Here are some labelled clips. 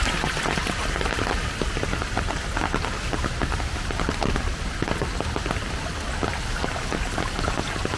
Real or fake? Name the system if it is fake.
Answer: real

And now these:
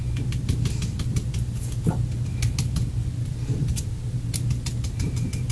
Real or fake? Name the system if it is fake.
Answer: real